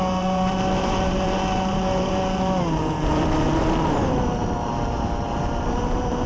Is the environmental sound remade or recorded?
remade